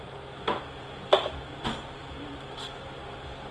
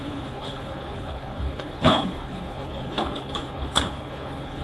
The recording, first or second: first